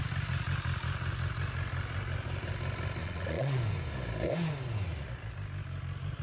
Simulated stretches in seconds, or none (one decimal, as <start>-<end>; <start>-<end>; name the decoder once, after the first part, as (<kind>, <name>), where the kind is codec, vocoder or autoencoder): 3.0-3.6 (vocoder, Vocos)